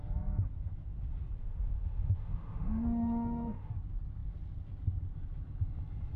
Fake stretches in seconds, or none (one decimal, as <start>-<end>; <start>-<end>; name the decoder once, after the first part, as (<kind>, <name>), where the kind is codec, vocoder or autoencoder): 1.4-3.7 (autoencoder, DAC-VAE)